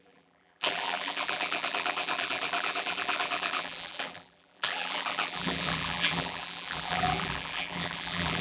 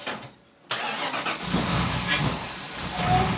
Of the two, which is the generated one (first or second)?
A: first